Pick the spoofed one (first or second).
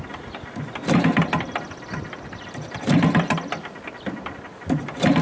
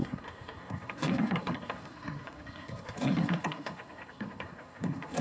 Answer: second